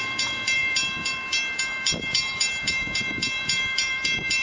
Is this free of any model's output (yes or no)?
no